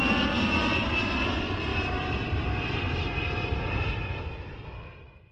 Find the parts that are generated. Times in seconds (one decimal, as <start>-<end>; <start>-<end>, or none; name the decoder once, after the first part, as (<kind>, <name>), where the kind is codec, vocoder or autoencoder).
1.7-4.2 (vocoder, BigVGAN v2)